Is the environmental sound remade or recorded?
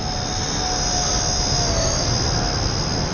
recorded